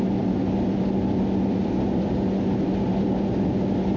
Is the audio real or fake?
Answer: real